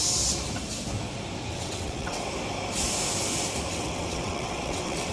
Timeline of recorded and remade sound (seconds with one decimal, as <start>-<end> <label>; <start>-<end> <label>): 0.0-1.5 recorded; 1.5-2.2 remade; 2.2-3.7 recorded; 3.7-5.1 remade